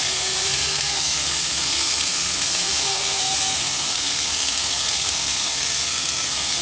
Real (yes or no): no